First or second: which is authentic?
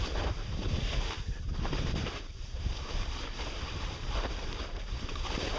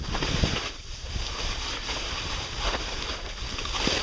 second